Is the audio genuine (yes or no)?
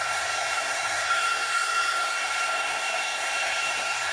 no